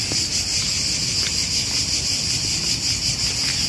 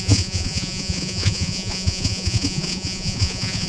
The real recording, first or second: first